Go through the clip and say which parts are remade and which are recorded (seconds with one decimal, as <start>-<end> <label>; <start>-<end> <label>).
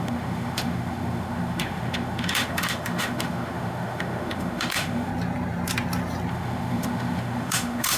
0.0-5.1 remade; 5.1-6.3 recorded; 6.3-8.0 remade